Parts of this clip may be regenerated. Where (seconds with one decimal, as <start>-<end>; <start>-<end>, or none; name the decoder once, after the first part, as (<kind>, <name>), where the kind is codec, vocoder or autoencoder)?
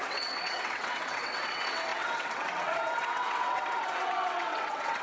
0.0-5.0 (vocoder, WaveNeXt)